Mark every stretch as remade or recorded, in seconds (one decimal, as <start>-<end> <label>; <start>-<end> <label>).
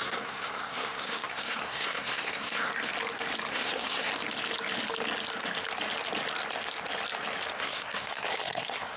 0.0-2.7 remade; 2.7-3.5 recorded; 3.5-4.1 remade; 4.1-7.6 recorded; 7.6-9.0 remade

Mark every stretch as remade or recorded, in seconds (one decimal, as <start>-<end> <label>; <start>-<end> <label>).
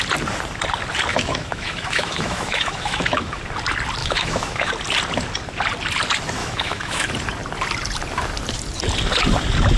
0.0-1.1 recorded; 1.1-3.4 remade; 3.4-4.0 recorded; 4.0-4.7 remade; 4.7-6.4 recorded; 6.4-7.1 remade; 7.1-9.8 recorded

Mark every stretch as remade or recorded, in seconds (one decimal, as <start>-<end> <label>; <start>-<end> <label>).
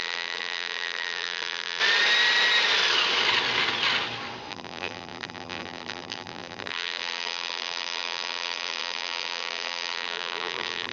0.0-1.8 remade; 1.8-4.5 recorded; 4.5-10.9 remade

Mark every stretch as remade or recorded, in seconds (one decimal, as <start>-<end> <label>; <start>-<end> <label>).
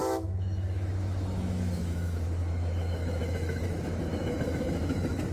0.0-5.3 remade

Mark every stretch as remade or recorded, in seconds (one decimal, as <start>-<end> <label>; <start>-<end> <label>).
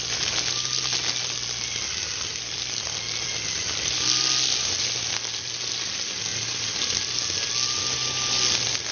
0.0-6.3 recorded; 6.3-7.0 remade; 7.0-8.9 recorded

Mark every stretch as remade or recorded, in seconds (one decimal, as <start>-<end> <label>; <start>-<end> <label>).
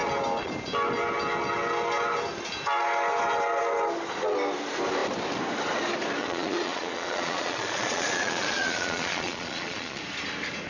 0.0-6.2 recorded; 6.2-10.0 remade; 10.0-10.7 recorded